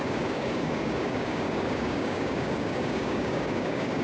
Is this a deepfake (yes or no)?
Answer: yes